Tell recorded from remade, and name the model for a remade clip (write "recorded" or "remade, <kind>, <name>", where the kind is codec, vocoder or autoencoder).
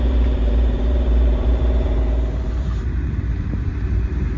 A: remade, vocoder, BigVGAN v2